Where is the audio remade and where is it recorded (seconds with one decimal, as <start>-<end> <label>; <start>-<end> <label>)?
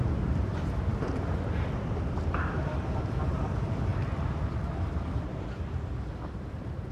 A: 0.0-6.9 remade